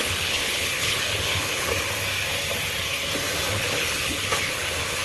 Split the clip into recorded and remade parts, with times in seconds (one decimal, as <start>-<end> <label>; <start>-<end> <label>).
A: 0.0-1.7 remade; 1.7-3.5 recorded; 3.5-5.0 remade